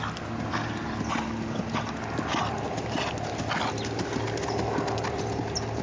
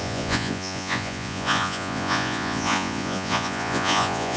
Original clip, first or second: first